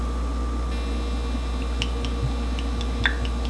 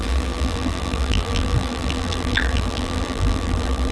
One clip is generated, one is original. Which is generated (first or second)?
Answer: second